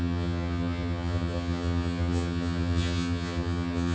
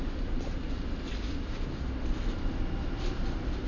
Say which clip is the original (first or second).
second